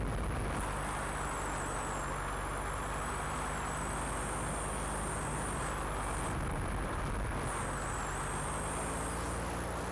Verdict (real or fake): real